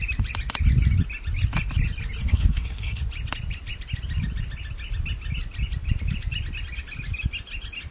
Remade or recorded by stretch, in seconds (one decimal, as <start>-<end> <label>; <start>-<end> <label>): 0.0-2.2 recorded; 2.2-3.0 remade; 3.0-7.9 recorded